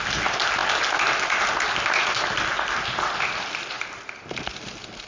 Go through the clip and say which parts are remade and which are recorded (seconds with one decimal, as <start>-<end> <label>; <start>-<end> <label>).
0.0-5.1 recorded